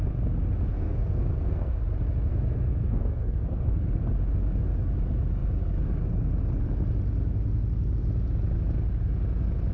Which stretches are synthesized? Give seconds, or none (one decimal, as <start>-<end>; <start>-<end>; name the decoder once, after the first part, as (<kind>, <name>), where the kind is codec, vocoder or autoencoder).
0.7-1.8 (codec, SNAC); 2.3-4.0